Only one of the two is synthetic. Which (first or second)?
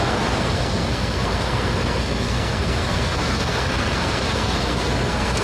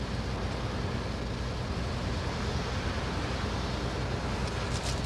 first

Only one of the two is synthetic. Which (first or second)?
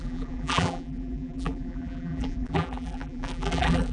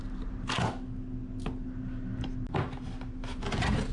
first